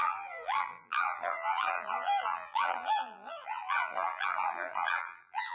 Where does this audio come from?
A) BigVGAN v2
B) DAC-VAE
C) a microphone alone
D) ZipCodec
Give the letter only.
A